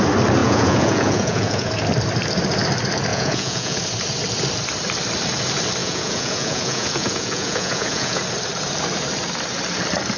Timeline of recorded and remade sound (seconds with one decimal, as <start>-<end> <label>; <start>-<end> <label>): 0.0-0.4 recorded; 0.4-1.7 remade; 1.7-3.1 recorded; 3.1-3.8 remade; 3.8-5.8 recorded; 5.8-8.2 remade; 8.2-10.2 recorded